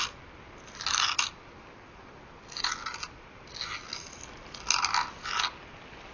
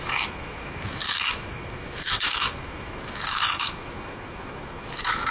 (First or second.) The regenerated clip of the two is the second